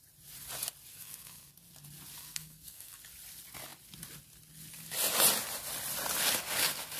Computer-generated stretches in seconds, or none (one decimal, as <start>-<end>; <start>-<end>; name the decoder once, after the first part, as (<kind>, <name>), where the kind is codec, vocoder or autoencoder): 0.9-1.5 (codec, SNAC); 2.2-3.0